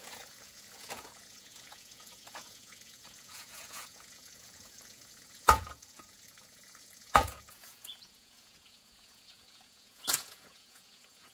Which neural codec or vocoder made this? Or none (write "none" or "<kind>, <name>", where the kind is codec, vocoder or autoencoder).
vocoder, Vocos